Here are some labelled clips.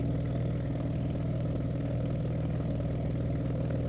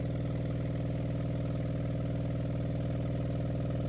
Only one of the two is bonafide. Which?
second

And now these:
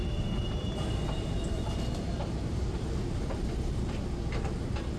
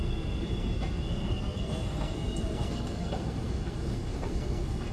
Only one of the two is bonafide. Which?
first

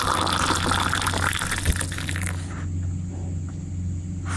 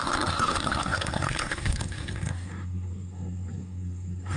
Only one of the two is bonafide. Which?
first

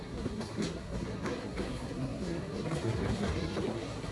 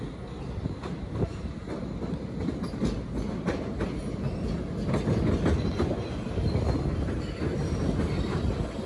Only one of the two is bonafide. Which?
second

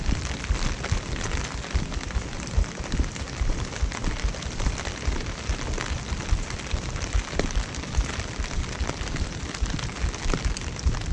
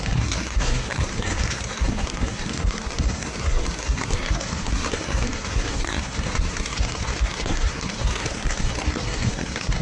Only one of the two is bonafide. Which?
first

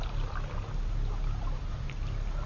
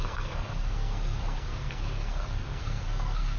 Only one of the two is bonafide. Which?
first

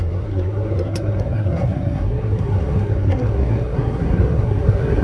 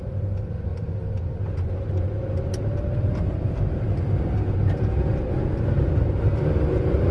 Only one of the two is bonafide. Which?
second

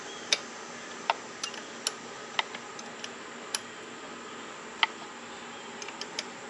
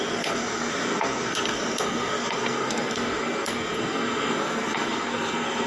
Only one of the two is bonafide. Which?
first